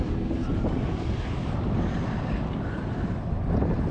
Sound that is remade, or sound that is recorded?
recorded